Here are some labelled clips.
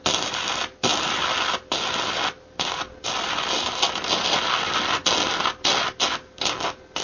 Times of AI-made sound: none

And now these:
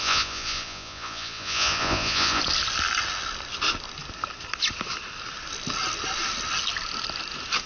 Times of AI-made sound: 0.0-2.4 (vocoder, Vocos)

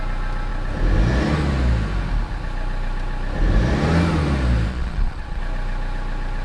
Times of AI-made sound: 4.7-5.4 (vocoder, Vocos)

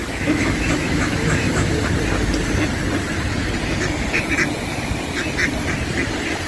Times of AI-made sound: 0.0-1.7 (autoencoder, DAC-VAE)